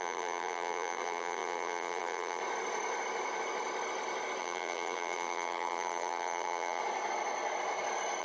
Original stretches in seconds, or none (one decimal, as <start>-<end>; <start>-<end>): 2.4-4.4; 6.8-8.2